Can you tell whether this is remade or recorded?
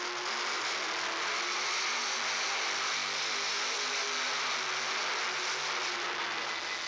recorded